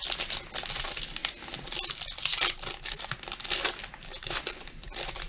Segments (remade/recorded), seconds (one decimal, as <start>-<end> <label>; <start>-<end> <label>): 0.0-5.3 recorded